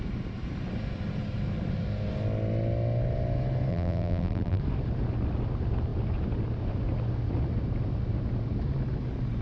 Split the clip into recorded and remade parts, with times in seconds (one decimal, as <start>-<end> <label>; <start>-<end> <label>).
0.0-3.7 recorded; 3.7-4.6 remade; 4.6-9.4 recorded